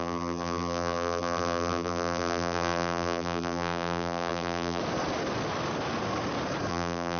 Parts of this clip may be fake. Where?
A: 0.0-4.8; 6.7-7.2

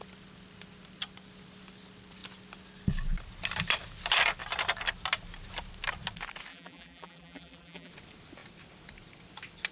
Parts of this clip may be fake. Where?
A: 6.5-7.9

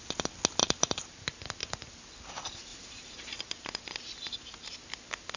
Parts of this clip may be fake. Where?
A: 0.6-1.2; 1.6-2.1; 2.7-3.4

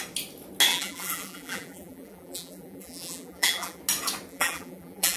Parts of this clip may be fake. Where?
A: 0.7-3.8; 4.3-5.2

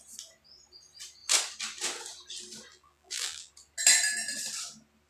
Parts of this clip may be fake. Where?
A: 2.7-3.5

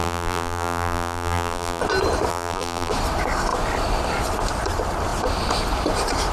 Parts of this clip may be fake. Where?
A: 0.0-1.8; 2.3-2.9

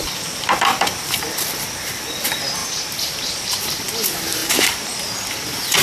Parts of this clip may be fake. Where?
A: 2.6-3.6; 4.4-5.1